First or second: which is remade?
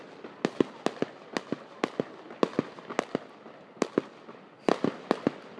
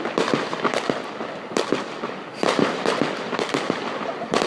second